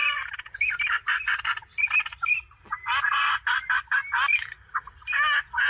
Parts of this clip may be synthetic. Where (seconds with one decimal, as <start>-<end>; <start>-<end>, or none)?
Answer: 0.0-0.5